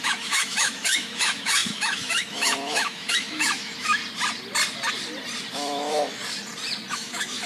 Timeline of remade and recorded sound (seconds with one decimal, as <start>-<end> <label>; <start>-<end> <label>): 0.0-4.0 remade; 4.0-5.5 recorded; 5.5-6.2 remade; 6.2-6.9 recorded; 6.9-7.5 remade